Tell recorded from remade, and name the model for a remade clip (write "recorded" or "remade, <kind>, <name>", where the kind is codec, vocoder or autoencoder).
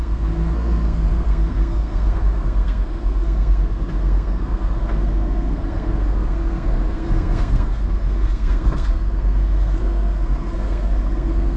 remade, codec, SNAC